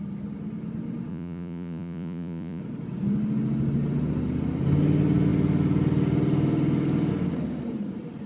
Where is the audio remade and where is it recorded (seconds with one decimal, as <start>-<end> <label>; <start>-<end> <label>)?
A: 0.0-1.1 recorded; 1.1-2.6 remade; 2.6-8.3 recorded